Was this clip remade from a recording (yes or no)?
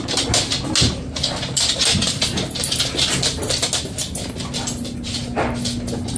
no